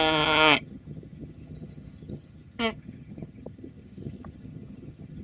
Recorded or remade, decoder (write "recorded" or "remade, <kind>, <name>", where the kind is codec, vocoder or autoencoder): remade, vocoder, HiFi-GAN